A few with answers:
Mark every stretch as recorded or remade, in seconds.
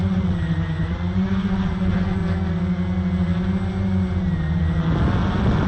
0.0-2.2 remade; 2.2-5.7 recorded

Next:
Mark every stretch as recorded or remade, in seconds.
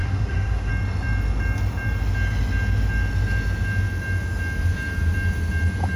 0.0-0.7 remade; 0.7-6.0 recorded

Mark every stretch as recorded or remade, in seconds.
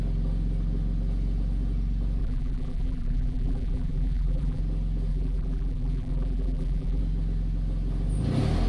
0.0-2.2 recorded; 2.2-4.6 remade; 4.6-5.1 recorded; 5.1-7.0 remade; 7.0-8.7 recorded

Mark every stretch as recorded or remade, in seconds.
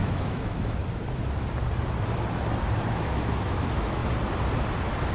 0.0-0.8 remade; 0.8-2.9 recorded; 2.9-4.0 remade; 4.0-5.1 recorded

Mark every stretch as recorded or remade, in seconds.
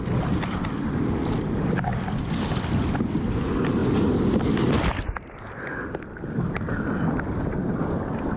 0.0-8.4 recorded